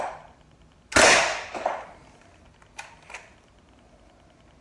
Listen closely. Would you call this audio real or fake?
real